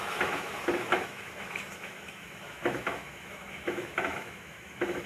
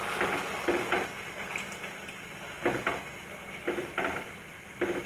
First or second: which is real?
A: second